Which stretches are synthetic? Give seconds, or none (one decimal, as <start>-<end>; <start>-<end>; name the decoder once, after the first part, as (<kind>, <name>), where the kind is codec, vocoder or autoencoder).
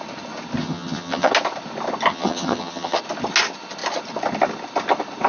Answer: 0.6-1.3 (vocoder, HiFi-GAN); 2.1-3.0